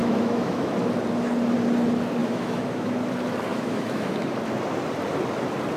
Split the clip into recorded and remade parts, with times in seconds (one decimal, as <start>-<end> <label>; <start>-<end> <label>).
0.0-0.7 remade; 0.7-2.2 recorded; 2.2-3.1 remade; 3.1-3.5 recorded; 3.5-4.3 remade; 4.3-5.8 recorded